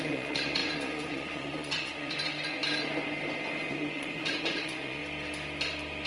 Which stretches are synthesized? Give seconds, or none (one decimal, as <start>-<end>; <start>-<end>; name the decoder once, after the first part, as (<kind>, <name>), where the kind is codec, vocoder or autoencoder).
0.0-2.6 (vocoder, Vocos); 3.7-5.0